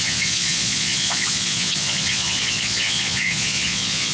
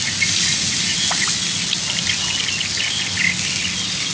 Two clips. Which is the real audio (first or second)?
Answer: second